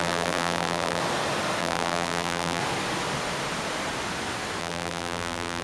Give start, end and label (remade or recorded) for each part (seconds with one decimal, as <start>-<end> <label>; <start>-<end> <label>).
0.0-1.0 remade; 1.0-1.6 recorded; 1.6-2.6 remade; 2.6-4.6 recorded; 4.6-5.6 remade